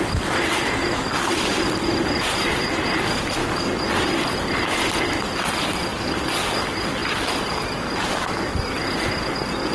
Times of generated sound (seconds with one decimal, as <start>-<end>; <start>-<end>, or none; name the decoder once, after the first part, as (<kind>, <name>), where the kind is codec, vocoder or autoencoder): none